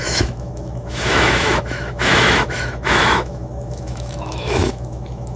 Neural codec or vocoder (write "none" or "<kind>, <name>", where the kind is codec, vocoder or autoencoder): autoencoder, DAC-VAE